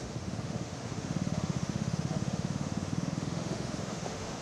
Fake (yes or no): yes